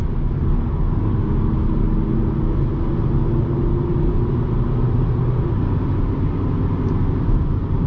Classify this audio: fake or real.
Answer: real